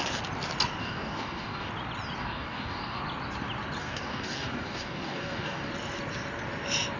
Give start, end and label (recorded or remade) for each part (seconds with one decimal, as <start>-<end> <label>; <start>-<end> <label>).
0.0-0.8 recorded; 0.8-1.7 remade; 1.7-2.2 recorded; 2.2-3.0 remade; 3.0-3.8 recorded; 3.8-5.7 remade; 5.7-7.0 recorded